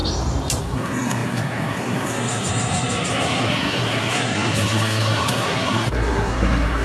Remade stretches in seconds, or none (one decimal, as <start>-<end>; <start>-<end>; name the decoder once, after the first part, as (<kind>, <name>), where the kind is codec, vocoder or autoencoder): 0.6-6.8 (codec, SNAC)